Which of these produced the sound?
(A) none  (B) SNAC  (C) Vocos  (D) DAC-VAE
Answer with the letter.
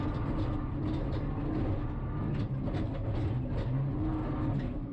A